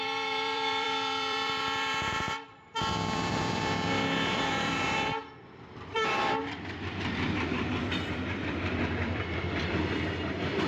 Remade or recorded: remade